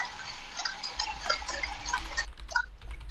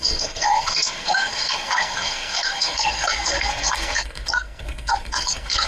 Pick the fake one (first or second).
second